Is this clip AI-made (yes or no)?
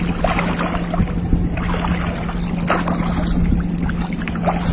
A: no